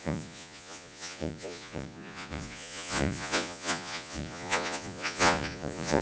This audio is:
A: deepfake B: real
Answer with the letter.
A